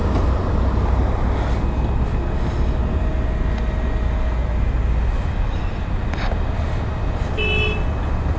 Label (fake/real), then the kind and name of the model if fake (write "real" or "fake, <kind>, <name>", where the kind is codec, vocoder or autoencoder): real